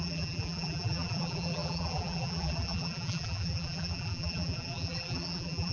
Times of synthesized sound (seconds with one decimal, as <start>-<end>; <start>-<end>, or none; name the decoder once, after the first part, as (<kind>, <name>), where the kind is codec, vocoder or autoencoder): 0.0-5.7 (vocoder, BigVGAN v2)